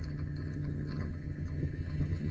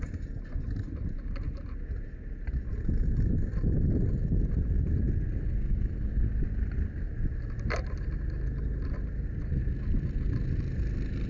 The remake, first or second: first